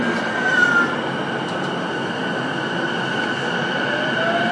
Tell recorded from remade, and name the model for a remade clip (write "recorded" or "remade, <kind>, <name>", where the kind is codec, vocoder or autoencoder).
recorded